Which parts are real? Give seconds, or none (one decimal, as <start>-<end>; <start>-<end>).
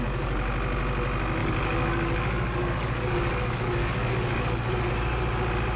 0.0-1.4; 4.9-5.8